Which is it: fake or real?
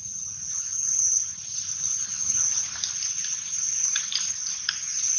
real